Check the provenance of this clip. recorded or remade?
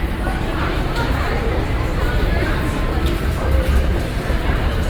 remade